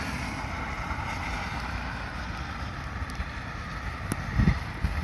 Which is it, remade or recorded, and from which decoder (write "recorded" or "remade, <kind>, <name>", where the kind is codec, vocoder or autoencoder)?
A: recorded